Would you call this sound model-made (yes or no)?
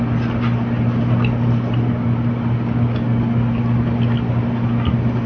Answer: no